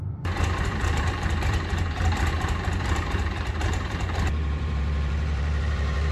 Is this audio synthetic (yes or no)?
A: yes